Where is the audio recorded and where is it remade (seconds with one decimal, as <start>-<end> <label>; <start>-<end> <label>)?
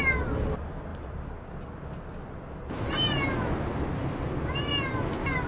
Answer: 0.0-5.5 recorded